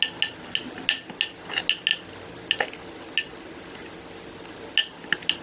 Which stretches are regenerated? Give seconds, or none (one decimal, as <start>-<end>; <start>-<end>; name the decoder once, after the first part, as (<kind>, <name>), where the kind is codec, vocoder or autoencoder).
none